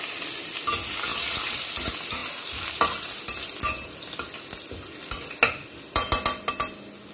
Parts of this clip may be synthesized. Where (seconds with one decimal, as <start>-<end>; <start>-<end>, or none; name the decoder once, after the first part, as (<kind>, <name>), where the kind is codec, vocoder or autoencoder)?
none